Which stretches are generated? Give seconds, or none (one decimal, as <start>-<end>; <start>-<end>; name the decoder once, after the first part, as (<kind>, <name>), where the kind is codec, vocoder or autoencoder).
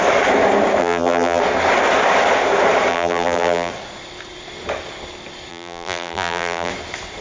0.8-1.4 (vocoder, BigVGAN v2); 2.9-3.7; 5.5-6.7